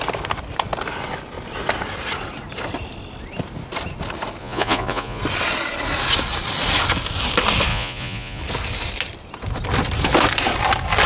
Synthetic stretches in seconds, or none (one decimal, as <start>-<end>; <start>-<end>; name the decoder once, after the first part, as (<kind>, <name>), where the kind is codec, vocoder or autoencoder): 4.4-5.2 (vocoder, Vocos); 7.7-8.4